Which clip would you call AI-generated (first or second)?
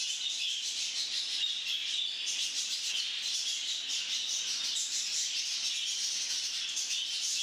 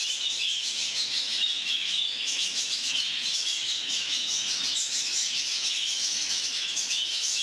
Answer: second